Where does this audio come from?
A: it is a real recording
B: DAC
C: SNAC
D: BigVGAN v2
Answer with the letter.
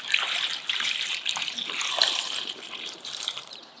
D